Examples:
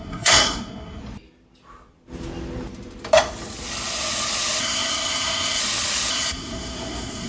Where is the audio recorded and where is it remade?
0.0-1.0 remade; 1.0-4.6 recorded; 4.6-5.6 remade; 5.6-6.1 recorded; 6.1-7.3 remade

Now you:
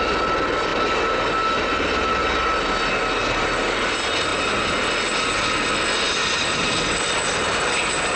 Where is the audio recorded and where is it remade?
0.0-8.2 recorded

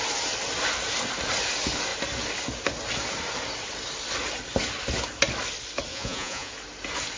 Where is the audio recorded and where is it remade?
0.0-5.9 recorded; 5.9-6.5 remade; 6.5-7.2 recorded

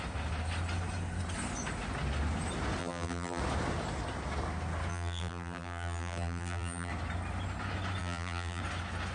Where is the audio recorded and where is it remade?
0.0-2.8 recorded; 2.8-3.4 remade; 3.4-4.9 recorded; 4.9-6.9 remade; 6.9-8.0 recorded; 8.0-8.6 remade; 8.6-9.1 recorded